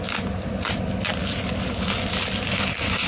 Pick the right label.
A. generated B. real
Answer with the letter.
B